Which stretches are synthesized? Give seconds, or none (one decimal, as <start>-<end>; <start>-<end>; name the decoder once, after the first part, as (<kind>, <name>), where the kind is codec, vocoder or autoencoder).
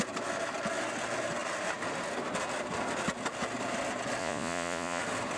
4.2-5.0 (vocoder, Vocos)